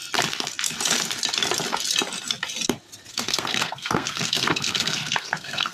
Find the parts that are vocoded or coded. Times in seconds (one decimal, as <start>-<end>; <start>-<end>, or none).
3.1-5.7

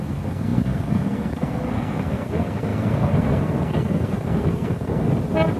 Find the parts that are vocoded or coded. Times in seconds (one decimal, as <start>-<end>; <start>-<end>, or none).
0.0-5.1

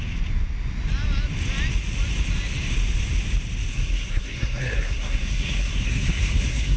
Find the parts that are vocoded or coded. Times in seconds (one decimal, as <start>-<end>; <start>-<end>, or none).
3.7-6.8

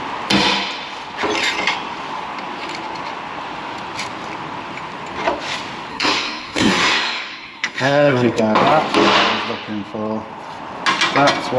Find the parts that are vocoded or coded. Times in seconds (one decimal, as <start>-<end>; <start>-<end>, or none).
5.9-8.4

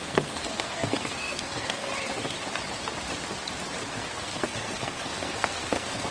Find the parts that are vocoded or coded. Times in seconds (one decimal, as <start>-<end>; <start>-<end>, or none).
0.0-1.9; 3.9-6.1